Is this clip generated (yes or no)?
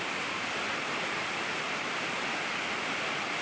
no